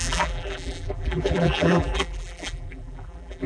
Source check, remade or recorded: remade